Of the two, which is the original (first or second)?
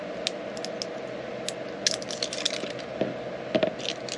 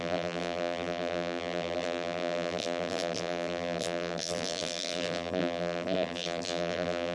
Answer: first